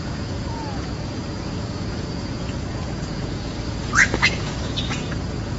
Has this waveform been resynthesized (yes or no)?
yes